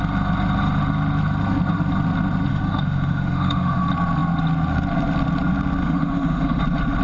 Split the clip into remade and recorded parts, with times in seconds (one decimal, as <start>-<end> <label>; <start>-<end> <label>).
0.0-2.5 recorded; 2.5-3.8 remade; 3.8-5.8 recorded; 5.8-6.6 remade; 6.6-7.0 recorded